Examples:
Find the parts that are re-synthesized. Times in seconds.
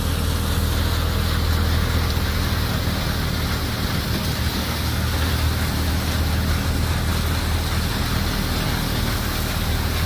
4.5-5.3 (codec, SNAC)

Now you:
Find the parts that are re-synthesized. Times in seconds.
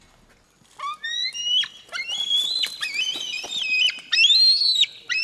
none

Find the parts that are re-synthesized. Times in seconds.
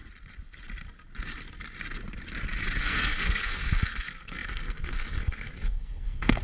2.8-6.4 (codec, SNAC)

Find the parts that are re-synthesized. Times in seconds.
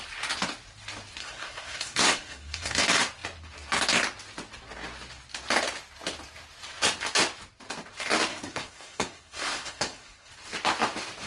1.2-2.8 (codec, SNAC); 8.3-10.3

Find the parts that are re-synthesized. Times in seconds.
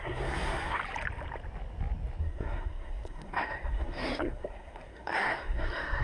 0.0-0.8 (codec, SNAC); 2.2-6.0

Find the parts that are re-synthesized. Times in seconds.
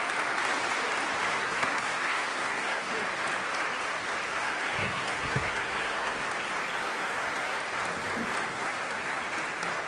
1.3-2.9 (codec, SNAC); 4.3-6.2; 6.8-7.6; 8.5-9.2